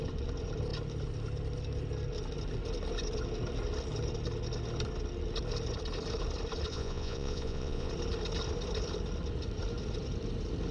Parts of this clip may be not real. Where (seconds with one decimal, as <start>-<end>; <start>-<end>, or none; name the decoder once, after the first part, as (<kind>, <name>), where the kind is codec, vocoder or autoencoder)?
6.7-7.9 (vocoder, Vocos)